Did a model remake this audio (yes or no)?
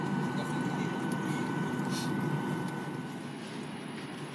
no